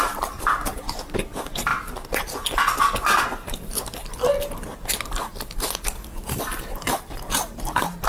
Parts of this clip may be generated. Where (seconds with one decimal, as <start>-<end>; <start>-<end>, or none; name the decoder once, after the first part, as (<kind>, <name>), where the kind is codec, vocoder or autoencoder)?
0.0-1.7 (vocoder, BigVGAN v2); 6.4-8.1